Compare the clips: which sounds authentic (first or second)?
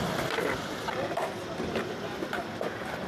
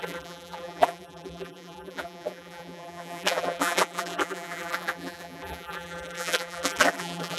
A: first